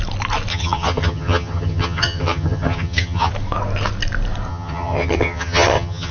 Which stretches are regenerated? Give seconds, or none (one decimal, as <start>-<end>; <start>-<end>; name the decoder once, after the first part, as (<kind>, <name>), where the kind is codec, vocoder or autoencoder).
0.5-3.3 (vocoder, HiFi-GAN); 4.5-6.1